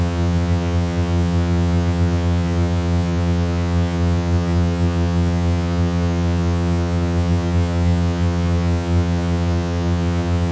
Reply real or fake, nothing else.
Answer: fake